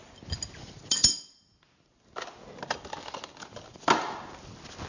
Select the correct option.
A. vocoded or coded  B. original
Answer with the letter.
B